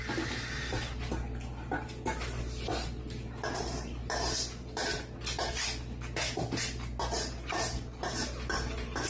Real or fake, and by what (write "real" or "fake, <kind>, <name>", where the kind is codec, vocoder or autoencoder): real